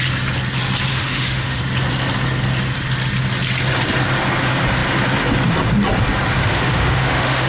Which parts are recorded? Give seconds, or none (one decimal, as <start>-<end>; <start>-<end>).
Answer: 0.0-0.9; 1.6-6.4